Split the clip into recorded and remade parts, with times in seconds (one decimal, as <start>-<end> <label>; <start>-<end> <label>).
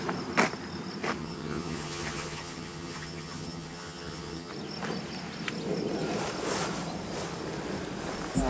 0.0-1.2 recorded; 1.2-4.5 remade; 4.5-8.5 recorded